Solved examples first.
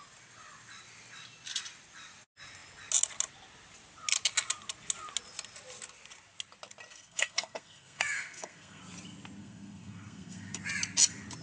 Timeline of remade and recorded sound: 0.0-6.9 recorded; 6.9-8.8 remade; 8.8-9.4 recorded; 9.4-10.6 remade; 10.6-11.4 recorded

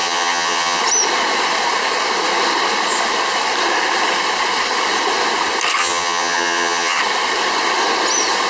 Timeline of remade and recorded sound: 0.0-0.8 remade; 0.8-5.8 recorded; 5.8-7.0 remade; 7.0-8.5 recorded

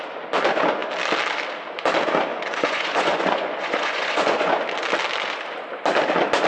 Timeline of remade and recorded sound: 0.0-2.3 recorded; 2.3-4.6 remade; 4.6-6.5 recorded

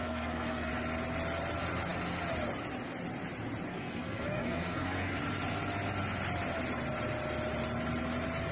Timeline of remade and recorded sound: 0.0-0.7 remade; 0.7-3.7 recorded; 3.7-5.2 remade; 5.2-8.5 recorded

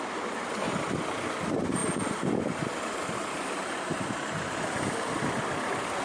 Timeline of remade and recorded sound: 0.0-6.0 recorded

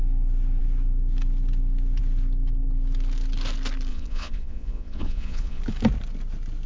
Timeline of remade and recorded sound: 0.0-3.9 recorded; 3.9-5.6 remade; 5.6-6.7 recorded

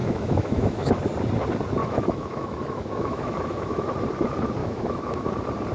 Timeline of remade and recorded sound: 0.0-0.9 remade; 0.9-1.8 recorded; 1.8-3.9 remade; 3.9-4.6 recorded; 4.6-5.3 remade; 5.3-5.7 recorded